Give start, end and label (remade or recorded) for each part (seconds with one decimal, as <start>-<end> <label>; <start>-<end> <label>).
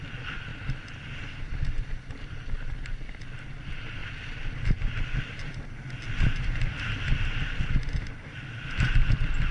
0.0-9.5 recorded